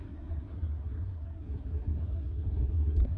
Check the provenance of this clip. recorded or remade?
remade